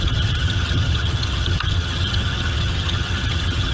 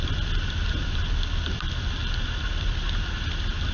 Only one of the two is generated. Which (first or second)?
first